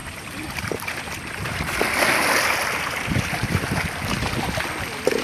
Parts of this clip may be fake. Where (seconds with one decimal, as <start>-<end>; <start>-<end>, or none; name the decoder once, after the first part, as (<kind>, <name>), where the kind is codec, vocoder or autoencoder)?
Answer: 0.0-1.0 (vocoder, BigVGAN v2)